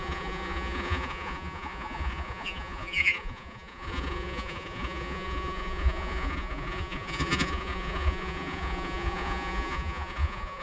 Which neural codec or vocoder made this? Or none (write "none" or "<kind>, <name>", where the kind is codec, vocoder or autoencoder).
vocoder, Vocos